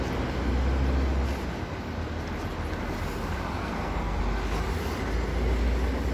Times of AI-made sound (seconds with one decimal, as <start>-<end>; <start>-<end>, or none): 3.6-4.2